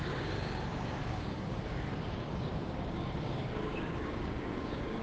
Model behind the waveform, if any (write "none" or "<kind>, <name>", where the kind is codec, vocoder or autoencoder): codec, DAC